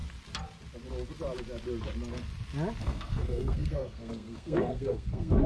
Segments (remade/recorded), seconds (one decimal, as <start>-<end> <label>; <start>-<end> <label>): 0.0-2.8 recorded; 2.8-5.5 remade

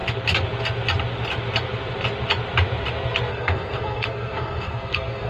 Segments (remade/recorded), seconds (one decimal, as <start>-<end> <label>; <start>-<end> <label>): 0.0-3.3 recorded; 3.3-5.3 remade

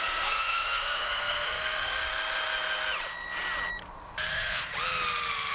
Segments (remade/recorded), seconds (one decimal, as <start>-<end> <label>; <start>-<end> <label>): 0.0-2.0 remade; 2.0-4.3 recorded; 4.3-4.7 remade; 4.7-5.5 recorded

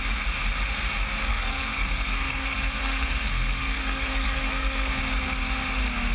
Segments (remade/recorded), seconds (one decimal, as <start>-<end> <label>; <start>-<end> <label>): 0.0-1.3 recorded; 1.3-5.0 remade; 5.0-6.1 recorded

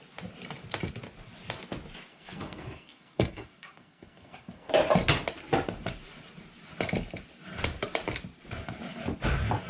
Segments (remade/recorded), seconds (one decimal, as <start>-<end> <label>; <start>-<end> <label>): 0.0-2.1 recorded; 2.1-4.7 remade; 4.7-9.7 recorded

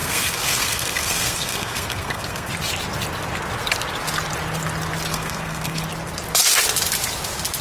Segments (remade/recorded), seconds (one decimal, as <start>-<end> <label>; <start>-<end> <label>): 0.0-2.5 remade; 2.5-5.1 recorded; 5.1-5.8 remade; 5.8-7.6 recorded

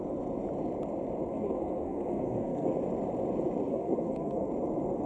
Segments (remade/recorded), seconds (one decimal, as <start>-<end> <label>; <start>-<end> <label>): 0.0-1.3 recorded; 1.3-2.8 remade; 2.8-3.7 recorded; 3.7-4.5 remade; 4.5-5.1 recorded